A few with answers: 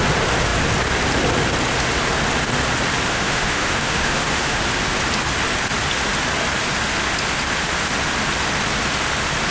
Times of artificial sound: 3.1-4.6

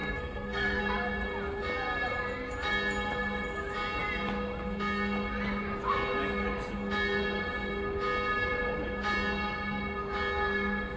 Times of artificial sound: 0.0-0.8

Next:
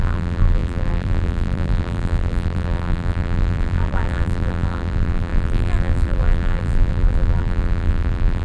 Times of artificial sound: 0.0-8.4

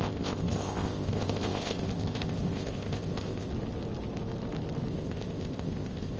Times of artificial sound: 0.0-3.5; 4.9-6.2

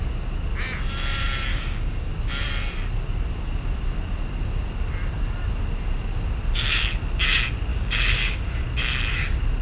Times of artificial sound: 1.5-2.1; 7.7-8.5

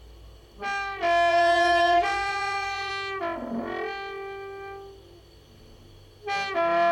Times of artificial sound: 1.3-2.9

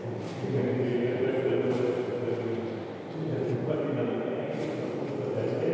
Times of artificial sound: 0.9-1.7

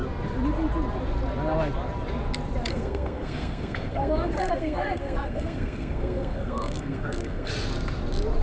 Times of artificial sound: 2.7-7.5